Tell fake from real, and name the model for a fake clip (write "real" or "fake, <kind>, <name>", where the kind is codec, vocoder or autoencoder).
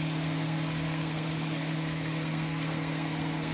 fake, codec, SNAC